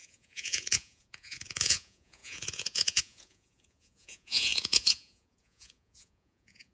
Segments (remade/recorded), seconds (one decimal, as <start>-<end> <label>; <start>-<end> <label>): 0.0-6.7 remade